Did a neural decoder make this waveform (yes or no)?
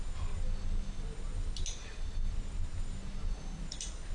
no